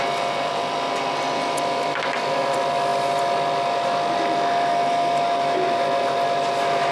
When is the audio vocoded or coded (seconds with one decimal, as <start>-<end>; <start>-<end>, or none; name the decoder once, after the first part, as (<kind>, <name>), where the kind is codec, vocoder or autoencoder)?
none